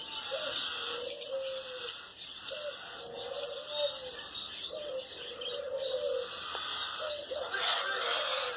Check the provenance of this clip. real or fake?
real